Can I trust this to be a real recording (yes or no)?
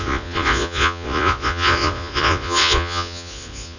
no